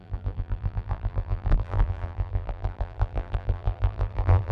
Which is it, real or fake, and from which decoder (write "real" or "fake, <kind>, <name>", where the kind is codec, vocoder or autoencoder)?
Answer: fake, vocoder, BigVGAN v2